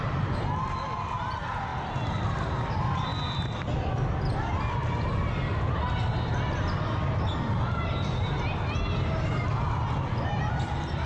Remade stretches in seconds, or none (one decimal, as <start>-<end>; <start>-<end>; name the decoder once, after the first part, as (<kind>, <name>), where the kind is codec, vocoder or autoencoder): none